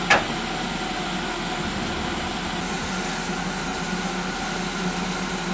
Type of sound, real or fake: real